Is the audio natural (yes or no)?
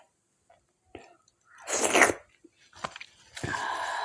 yes